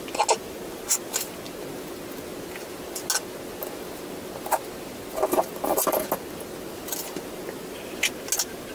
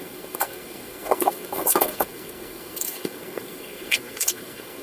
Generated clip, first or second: second